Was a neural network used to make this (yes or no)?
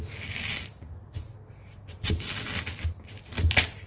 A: no